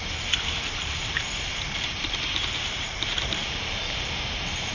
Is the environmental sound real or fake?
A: fake